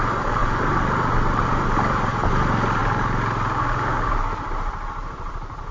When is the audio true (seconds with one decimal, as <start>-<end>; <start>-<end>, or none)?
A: 0.0-0.4; 2.3-5.7